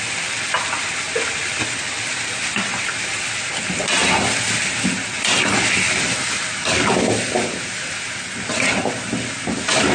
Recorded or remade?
recorded